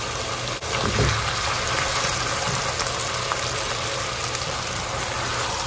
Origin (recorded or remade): recorded